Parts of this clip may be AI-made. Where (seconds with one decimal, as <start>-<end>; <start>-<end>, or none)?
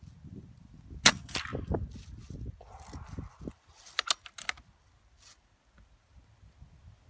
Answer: none